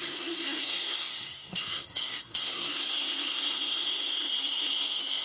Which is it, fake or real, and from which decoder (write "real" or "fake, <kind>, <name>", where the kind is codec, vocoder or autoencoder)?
fake, codec, SNAC